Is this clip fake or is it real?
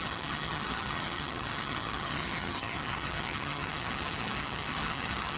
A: fake